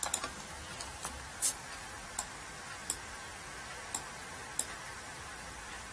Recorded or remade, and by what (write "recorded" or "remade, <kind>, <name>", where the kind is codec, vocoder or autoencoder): recorded